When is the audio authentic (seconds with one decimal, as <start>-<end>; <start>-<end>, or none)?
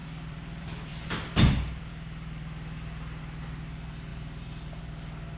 3.2-4.1; 4.8-5.4